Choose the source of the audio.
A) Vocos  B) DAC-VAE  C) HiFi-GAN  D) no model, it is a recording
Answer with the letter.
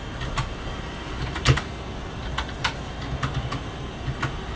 D